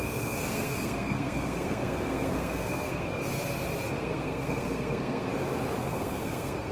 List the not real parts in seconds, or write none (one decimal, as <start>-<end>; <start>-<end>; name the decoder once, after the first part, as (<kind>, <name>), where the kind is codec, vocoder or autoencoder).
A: 0.0-3.2 (codec, SNAC); 3.9-5.3; 5.8-6.7